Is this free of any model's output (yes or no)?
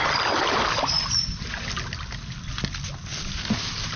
yes